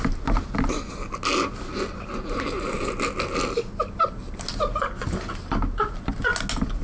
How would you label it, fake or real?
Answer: real